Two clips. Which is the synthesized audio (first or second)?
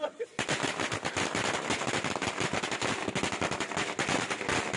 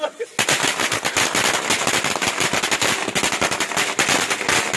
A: first